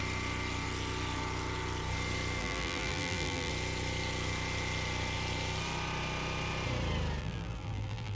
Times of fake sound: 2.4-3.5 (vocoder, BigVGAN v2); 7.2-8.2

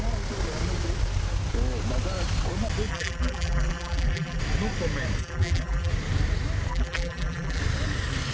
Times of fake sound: 2.9-4.4 (vocoder, BigVGAN v2); 5.2-5.9; 6.7-7.6

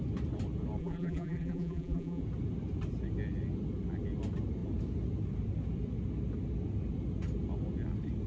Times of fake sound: 0.8-2.2 (vocoder, BigVGAN v2)

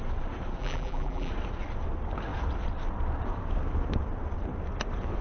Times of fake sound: 0.6-1.3 (vocoder, BigVGAN v2)

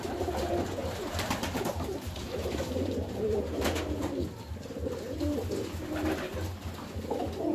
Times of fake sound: 0.8-3.8 (vocoder, BigVGAN v2); 4.8-5.5